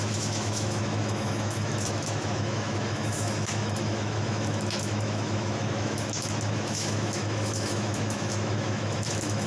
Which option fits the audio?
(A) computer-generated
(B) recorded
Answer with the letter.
A